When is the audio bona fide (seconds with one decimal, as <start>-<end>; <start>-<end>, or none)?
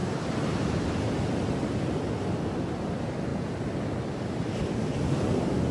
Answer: 0.0-5.7